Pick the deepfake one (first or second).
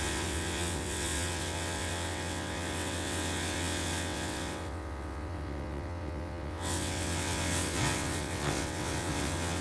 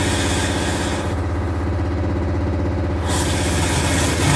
first